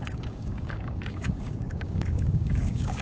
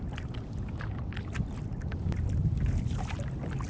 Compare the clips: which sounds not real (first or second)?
first